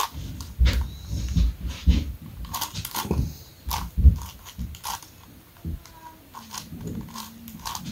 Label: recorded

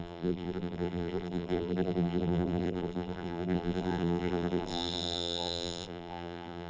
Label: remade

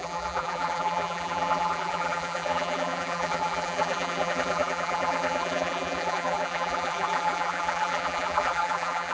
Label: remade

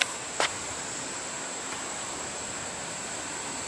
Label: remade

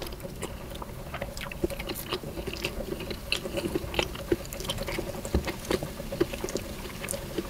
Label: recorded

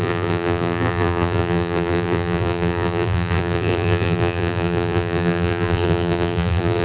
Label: remade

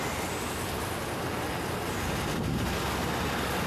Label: recorded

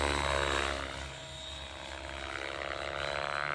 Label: recorded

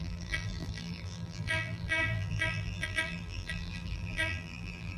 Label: remade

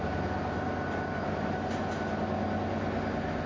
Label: recorded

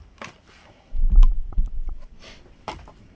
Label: remade